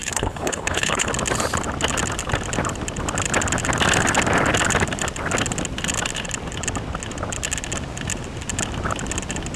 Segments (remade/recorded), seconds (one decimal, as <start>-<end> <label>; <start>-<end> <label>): 0.0-1.1 remade; 1.1-9.6 recorded